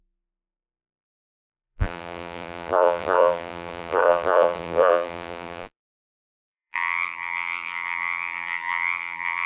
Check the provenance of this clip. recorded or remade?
remade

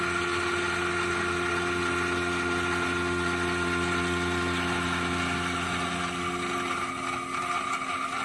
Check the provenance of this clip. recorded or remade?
recorded